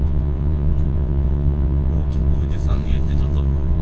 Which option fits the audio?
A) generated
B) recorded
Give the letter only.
A